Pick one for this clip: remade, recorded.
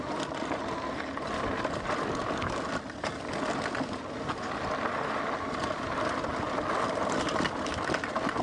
recorded